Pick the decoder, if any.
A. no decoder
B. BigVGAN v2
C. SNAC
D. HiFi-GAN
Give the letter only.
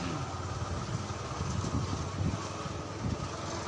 A